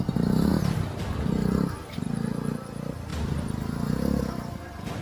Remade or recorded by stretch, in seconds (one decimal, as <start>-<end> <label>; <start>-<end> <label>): 0.0-5.0 recorded